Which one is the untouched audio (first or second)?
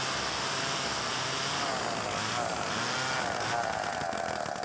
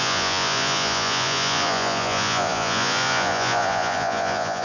first